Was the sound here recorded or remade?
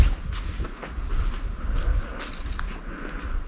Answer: recorded